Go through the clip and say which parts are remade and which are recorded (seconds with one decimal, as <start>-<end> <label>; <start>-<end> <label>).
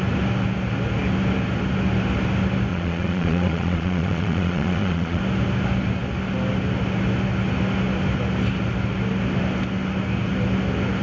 0.0-2.7 recorded; 2.7-5.2 remade; 5.2-11.0 recorded